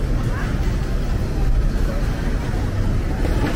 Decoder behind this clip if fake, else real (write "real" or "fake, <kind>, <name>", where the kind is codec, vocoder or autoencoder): real